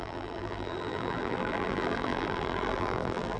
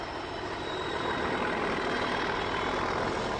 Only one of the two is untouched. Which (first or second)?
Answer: second